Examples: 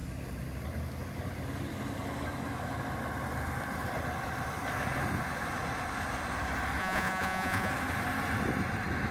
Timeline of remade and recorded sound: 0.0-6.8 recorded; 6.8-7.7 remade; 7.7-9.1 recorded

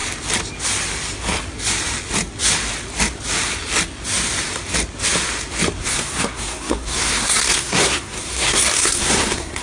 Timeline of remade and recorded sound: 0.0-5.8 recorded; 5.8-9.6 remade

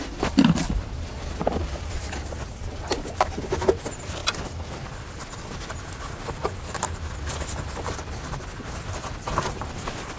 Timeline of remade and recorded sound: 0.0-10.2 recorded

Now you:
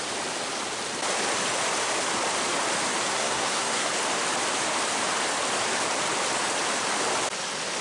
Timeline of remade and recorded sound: 0.0-3.1 recorded; 3.1-3.9 remade; 3.9-7.8 recorded

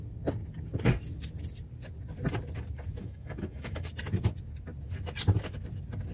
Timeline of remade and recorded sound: 0.0-3.0 recorded; 3.0-3.9 remade; 3.9-6.1 recorded

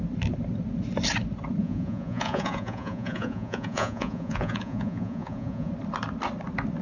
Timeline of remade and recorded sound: 0.0-1.6 recorded; 1.6-5.7 remade; 5.7-6.8 recorded